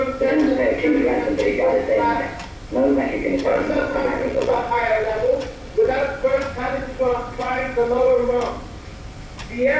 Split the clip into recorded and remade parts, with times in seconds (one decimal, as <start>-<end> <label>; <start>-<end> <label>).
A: 0.0-3.5 recorded; 3.5-8.5 remade; 8.5-9.8 recorded